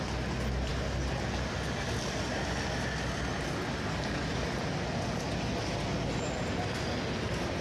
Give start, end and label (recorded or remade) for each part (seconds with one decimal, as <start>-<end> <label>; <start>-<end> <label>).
0.0-7.6 recorded